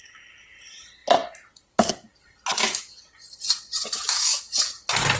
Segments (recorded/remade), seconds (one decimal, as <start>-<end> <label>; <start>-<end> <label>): 0.0-2.5 recorded; 2.5-3.0 remade; 3.0-3.9 recorded; 3.9-4.5 remade; 4.5-5.2 recorded